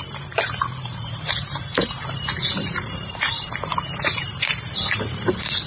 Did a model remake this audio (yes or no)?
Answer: yes